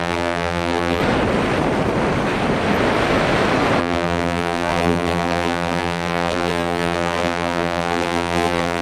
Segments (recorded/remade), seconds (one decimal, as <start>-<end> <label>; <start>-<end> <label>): 0.0-1.0 remade; 1.0-3.8 recorded; 3.8-8.8 remade